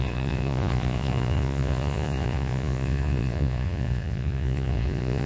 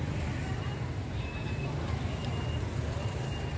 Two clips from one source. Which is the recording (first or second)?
second